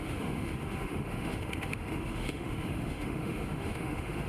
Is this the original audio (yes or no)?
no